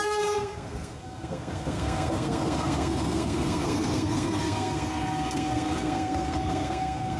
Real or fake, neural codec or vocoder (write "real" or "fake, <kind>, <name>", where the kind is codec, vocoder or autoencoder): fake, codec, SNAC